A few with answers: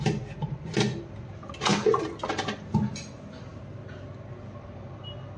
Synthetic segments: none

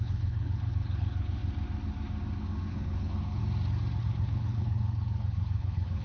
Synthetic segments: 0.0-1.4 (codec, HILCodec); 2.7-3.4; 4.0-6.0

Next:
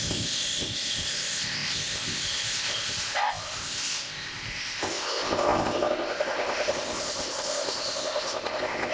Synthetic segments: 0.0-8.9 (codec, ZipCodec)